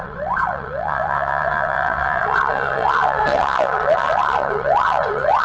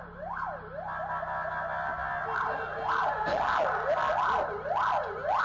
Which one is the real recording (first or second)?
second